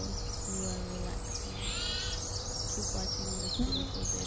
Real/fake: real